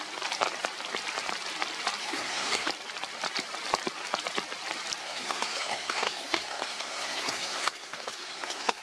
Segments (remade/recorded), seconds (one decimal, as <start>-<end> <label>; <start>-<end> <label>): 0.0-2.0 recorded; 2.0-2.7 remade; 2.7-5.0 recorded; 5.0-8.8 remade